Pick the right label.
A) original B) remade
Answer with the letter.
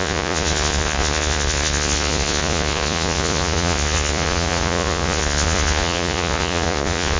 B